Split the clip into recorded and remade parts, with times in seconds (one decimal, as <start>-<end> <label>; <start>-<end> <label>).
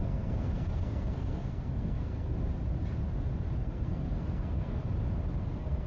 0.0-2.3 remade; 2.3-3.6 recorded; 3.6-4.8 remade; 4.8-5.4 recorded; 5.4-5.9 remade